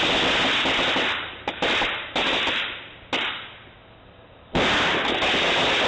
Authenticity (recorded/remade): recorded